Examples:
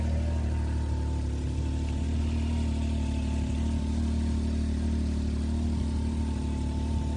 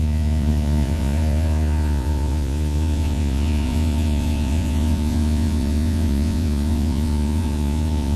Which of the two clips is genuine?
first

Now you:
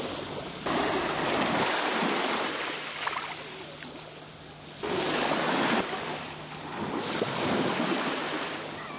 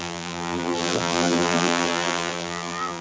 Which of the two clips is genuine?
first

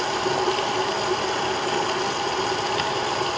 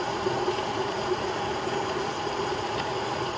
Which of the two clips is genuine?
first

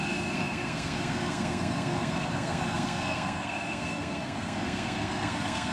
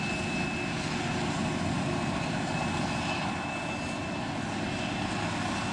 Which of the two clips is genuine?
second